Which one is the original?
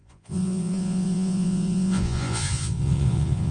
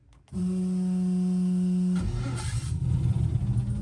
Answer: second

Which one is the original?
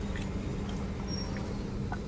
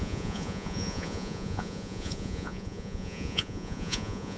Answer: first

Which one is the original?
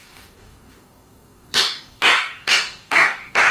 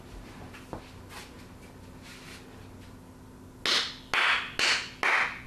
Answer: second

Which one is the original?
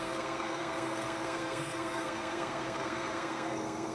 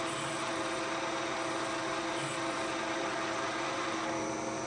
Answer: second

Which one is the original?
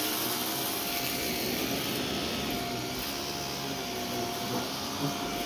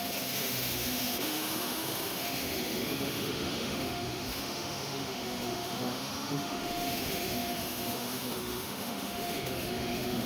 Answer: first